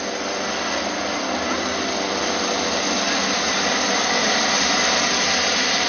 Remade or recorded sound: recorded